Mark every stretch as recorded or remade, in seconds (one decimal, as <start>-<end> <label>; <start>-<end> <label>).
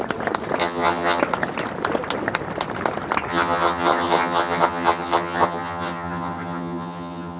0.0-0.6 recorded; 0.6-1.2 remade; 1.2-3.3 recorded; 3.3-7.4 remade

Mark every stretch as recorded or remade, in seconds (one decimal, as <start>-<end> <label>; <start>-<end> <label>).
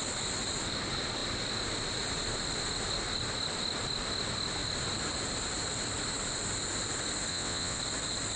0.0-7.3 recorded; 7.3-7.8 remade; 7.8-8.4 recorded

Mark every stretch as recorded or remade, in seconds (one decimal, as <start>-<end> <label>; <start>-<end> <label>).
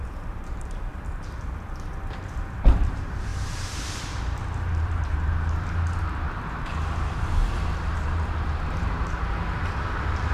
0.0-0.9 remade; 0.9-2.4 recorded; 2.4-7.4 remade; 7.4-7.9 recorded; 7.9-10.3 remade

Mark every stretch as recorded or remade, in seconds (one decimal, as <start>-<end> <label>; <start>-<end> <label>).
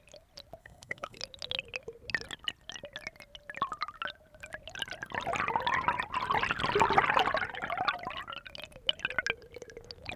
0.0-0.6 recorded; 0.6-1.2 remade; 1.2-10.2 recorded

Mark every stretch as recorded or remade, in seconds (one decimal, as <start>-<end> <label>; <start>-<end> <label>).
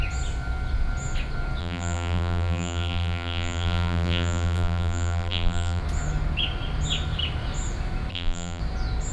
0.0-1.6 recorded; 1.6-5.8 remade; 5.8-8.1 recorded; 8.1-8.6 remade; 8.6-9.1 recorded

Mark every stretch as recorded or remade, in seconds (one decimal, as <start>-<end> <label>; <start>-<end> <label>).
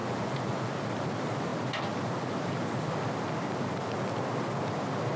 0.0-0.7 remade; 0.7-5.2 recorded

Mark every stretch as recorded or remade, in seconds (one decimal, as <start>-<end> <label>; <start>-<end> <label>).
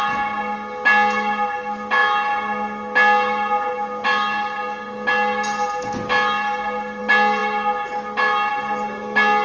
0.0-9.4 recorded